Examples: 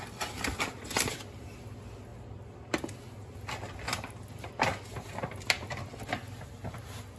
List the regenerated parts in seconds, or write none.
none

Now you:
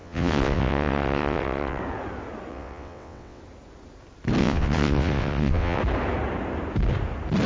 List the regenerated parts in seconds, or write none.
0.0-1.8; 2.5-3.4; 4.4-5.8

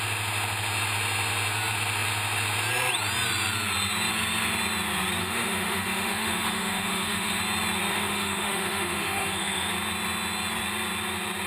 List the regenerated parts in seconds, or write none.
5.2-7.4; 7.9-9.7